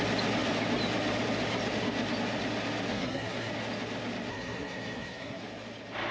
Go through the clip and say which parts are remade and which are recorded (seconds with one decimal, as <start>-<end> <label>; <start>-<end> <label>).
0.0-2.9 recorded; 2.9-3.5 remade; 3.5-4.3 recorded; 4.3-5.4 remade; 5.4-6.1 recorded